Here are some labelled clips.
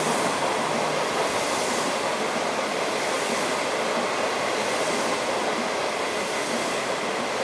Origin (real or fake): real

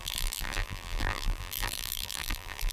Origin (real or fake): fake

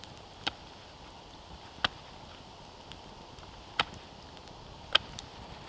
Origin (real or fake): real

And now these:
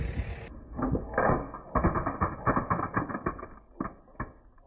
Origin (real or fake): real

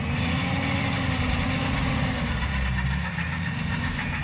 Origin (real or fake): real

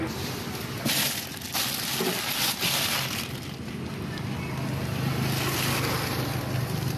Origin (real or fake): real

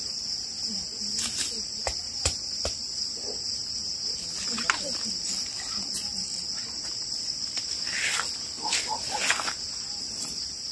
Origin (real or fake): real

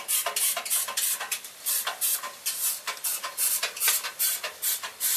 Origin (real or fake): real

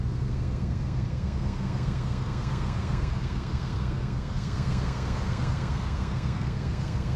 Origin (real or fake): fake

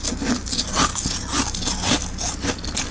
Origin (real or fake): real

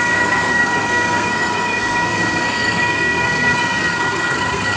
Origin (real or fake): fake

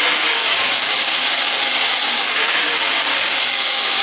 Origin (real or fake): fake